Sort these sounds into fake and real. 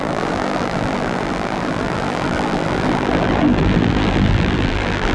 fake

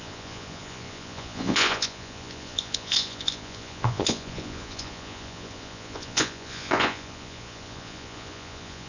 fake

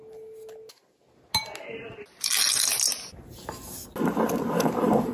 real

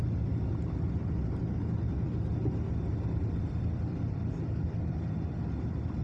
fake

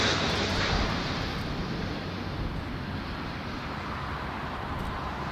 real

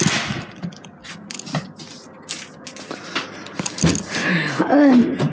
real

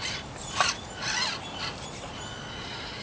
real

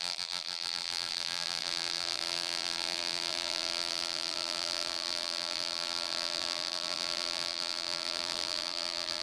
fake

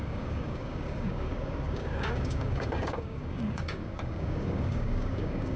fake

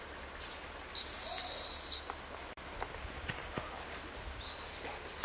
real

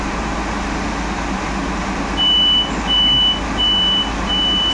real